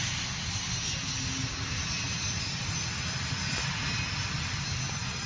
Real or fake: real